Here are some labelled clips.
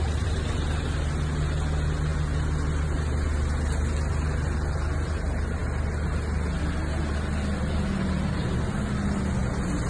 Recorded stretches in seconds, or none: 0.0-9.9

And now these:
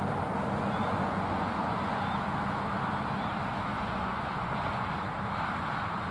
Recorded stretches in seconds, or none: 0.0-0.8; 2.0-3.7; 5.1-6.1

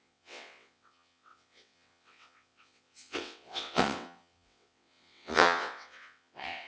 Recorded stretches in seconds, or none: none